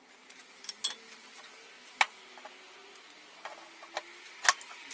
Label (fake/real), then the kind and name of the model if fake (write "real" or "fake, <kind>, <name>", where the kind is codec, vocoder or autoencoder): real